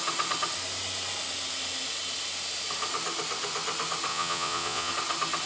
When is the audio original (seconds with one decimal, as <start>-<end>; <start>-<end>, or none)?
0.0-4.1; 4.9-5.5